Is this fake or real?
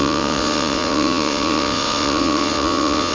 fake